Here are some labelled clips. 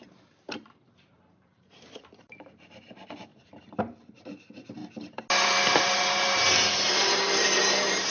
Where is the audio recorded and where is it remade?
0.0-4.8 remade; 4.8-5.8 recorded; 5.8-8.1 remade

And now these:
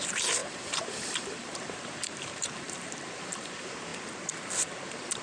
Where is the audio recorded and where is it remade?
0.0-3.9 remade; 3.9-5.2 recorded